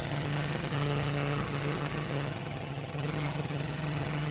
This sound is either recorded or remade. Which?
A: remade